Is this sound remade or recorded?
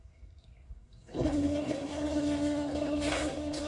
remade